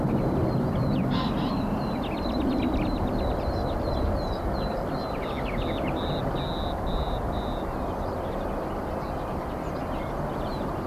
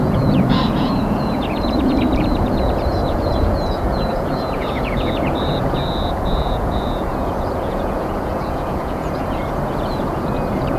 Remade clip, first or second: second